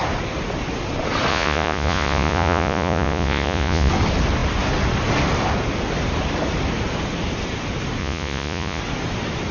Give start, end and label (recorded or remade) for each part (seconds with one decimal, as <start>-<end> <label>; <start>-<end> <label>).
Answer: 0.0-1.3 recorded; 1.3-3.9 remade; 3.9-8.0 recorded; 8.0-8.8 remade; 8.8-9.5 recorded